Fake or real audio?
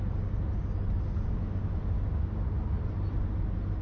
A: real